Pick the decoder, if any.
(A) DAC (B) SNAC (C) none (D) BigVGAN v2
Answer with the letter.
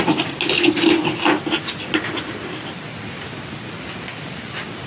C